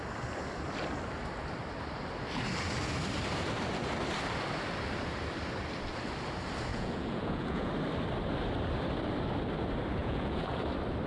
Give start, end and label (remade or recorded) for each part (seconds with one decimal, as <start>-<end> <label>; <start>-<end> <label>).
0.0-6.7 recorded; 6.7-7.7 remade; 7.7-10.0 recorded; 10.0-10.6 remade; 10.6-11.1 recorded